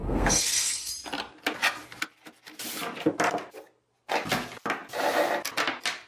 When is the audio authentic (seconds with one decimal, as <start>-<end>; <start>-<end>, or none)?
0.9-6.1